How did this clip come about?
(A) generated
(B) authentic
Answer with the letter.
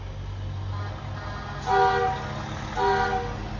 B